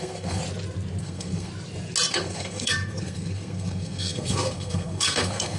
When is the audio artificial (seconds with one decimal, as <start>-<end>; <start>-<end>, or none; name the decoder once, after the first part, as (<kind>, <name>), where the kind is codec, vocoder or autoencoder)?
0.0-0.4 (codec, SNAC); 1.0-1.5; 2.1-5.6